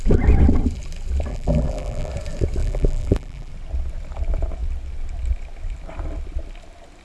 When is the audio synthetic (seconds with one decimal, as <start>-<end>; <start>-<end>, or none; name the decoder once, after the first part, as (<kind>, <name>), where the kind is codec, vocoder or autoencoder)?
1.3-2.1 (vocoder, BigVGAN v2); 2.6-3.5